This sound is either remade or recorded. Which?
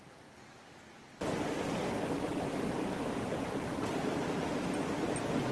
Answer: recorded